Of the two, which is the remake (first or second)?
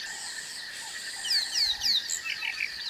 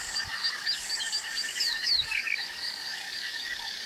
second